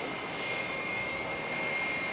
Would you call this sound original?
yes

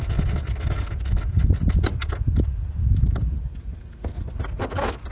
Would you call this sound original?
yes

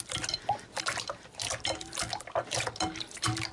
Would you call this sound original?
yes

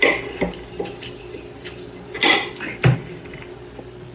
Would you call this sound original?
yes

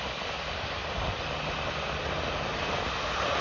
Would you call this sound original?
yes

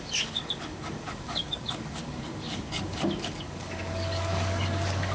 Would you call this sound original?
no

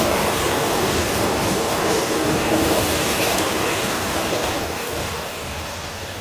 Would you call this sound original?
no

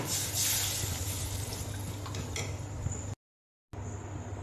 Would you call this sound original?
yes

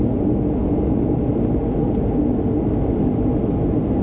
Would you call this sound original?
yes